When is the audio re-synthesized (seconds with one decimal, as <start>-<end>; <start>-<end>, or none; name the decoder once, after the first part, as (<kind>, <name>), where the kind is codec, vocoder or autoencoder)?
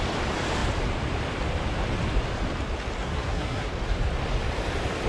3.0-3.7 (codec, SNAC)